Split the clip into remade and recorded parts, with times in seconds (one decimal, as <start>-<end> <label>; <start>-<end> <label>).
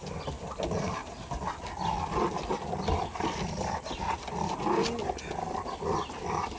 0.0-6.6 recorded